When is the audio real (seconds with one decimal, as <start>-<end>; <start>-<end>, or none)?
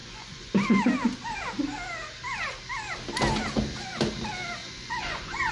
0.5-4.6